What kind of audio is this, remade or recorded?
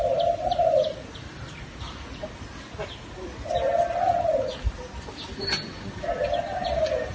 recorded